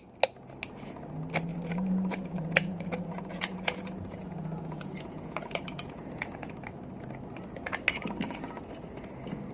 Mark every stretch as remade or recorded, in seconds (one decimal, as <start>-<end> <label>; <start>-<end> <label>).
0.0-1.5 recorded; 1.5-6.5 remade; 6.5-9.5 recorded